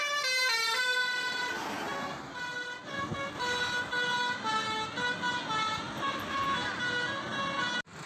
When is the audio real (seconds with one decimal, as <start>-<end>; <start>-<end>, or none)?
0.0-8.1

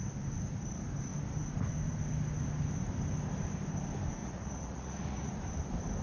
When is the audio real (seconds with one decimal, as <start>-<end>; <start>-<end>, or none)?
0.0-4.2; 5.3-6.0

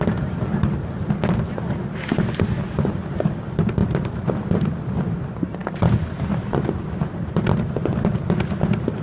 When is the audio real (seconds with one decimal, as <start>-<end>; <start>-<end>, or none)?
0.0-9.0

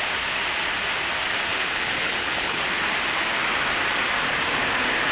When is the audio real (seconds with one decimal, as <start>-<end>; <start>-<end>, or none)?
0.0-1.5; 2.6-5.1